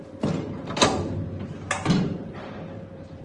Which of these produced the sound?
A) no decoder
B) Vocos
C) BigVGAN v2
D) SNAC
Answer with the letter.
C